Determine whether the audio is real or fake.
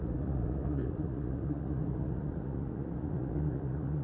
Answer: fake